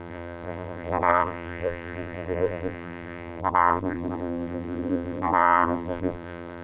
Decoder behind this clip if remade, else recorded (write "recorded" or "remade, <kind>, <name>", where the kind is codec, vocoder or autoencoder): remade, vocoder, BigVGAN v2